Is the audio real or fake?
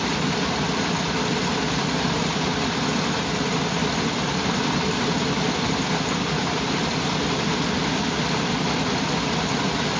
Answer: real